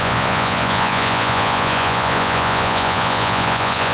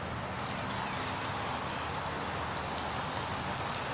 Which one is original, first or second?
second